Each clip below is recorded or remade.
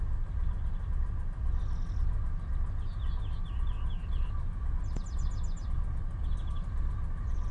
recorded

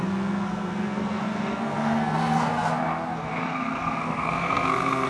remade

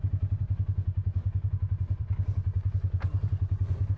recorded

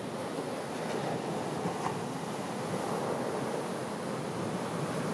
recorded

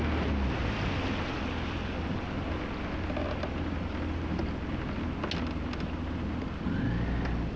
recorded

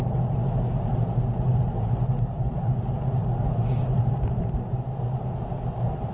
recorded